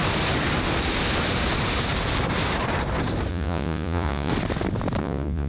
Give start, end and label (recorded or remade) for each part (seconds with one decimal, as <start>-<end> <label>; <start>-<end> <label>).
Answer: 0.0-3.3 recorded; 3.3-4.3 remade; 4.3-5.0 recorded; 5.0-5.5 remade